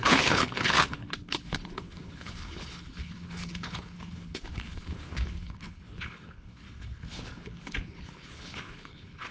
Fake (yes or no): yes